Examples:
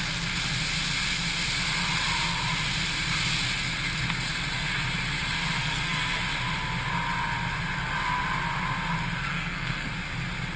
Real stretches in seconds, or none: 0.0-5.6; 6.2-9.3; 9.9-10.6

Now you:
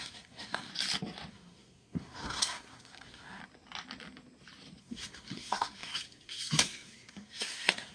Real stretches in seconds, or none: 0.7-1.3; 3.4-4.8

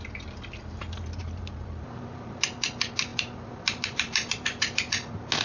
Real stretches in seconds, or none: 0.0-1.2; 2.7-3.1; 4.8-5.4

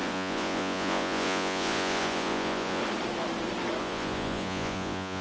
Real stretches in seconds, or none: 2.8-3.8

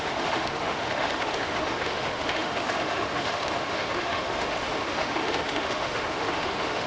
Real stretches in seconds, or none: none

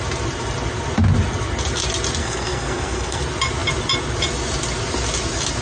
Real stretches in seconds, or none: 0.0-2.2; 3.2-5.6

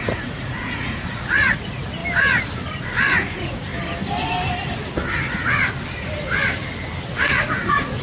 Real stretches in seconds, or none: 2.0-2.8; 3.7-7.1

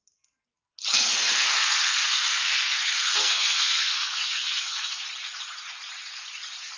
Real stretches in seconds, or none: 0.0-0.9; 5.0-6.8